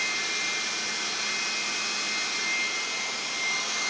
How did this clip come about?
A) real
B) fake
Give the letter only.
A